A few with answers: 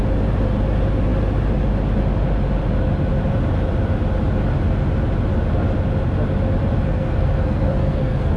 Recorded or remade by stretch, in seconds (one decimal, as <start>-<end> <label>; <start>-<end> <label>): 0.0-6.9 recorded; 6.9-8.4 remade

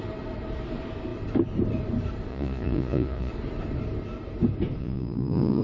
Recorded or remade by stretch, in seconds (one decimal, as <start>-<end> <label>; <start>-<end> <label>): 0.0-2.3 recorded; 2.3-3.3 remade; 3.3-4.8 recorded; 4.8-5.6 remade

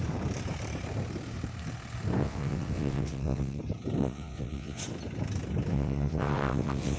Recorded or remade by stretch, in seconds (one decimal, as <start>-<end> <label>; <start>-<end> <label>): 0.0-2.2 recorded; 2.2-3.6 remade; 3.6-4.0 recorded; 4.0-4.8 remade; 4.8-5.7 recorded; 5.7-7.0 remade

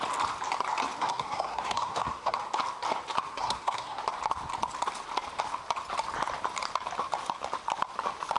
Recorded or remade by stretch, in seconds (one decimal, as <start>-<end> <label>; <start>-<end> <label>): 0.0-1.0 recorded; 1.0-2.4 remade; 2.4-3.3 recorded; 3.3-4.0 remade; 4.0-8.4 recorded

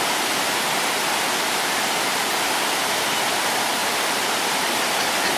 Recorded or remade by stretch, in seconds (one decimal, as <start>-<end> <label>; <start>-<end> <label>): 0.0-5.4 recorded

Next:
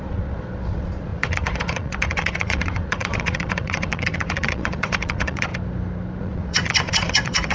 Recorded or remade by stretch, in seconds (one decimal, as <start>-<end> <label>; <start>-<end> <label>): 0.0-5.5 remade; 5.5-6.2 recorded; 6.2-7.5 remade

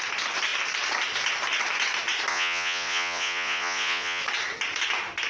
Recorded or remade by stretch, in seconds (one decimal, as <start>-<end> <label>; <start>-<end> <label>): 0.0-2.3 recorded; 2.3-4.2 remade; 4.2-5.3 recorded